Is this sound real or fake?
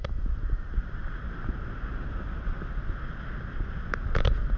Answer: real